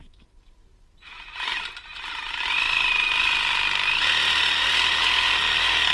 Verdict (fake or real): real